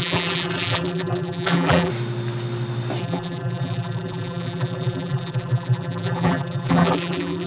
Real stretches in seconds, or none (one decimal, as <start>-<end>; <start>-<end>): 1.9-3.0